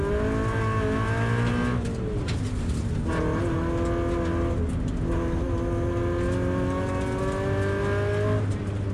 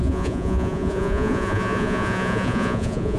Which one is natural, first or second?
first